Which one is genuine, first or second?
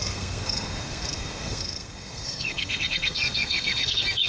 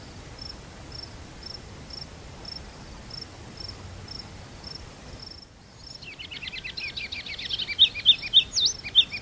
second